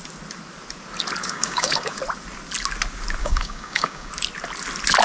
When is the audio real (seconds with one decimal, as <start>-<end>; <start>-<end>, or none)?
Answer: 0.0-1.2; 2.0-3.2; 4.1-5.0